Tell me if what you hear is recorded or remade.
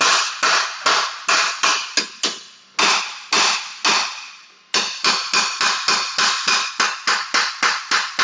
recorded